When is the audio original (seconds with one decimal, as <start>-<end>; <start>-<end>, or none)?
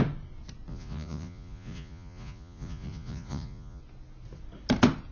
0.0-0.7; 3.8-5.1